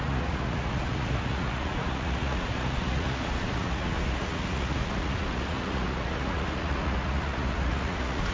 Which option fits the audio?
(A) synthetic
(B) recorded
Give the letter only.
A